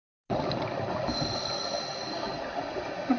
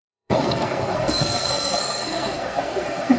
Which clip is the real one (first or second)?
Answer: first